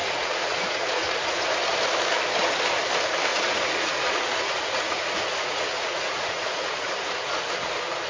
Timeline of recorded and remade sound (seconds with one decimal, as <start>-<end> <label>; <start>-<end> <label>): 0.0-1.6 remade; 1.6-3.3 recorded; 3.3-7.5 remade; 7.5-8.1 recorded